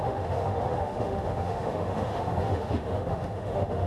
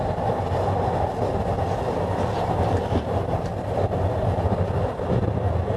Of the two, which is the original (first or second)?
second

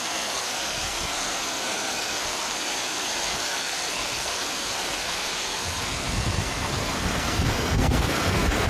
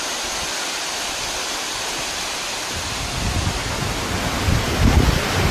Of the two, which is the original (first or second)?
second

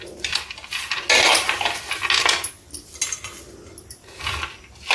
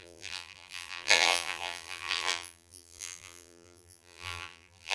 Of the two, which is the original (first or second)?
first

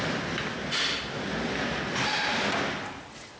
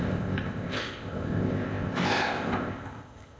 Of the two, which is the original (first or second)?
first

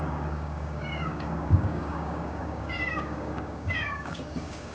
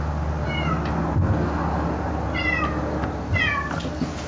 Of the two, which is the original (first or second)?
second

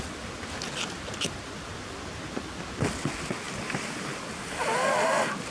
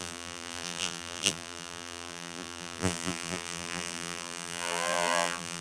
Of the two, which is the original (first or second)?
first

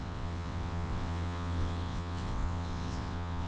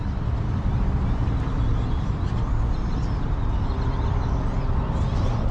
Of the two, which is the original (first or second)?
second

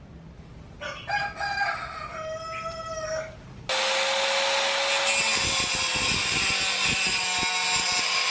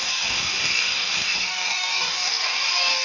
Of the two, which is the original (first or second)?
first